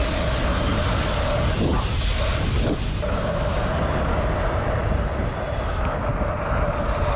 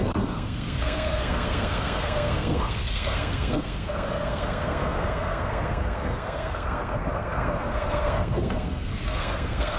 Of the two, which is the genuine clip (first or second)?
first